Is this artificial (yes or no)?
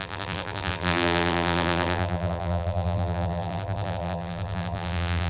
yes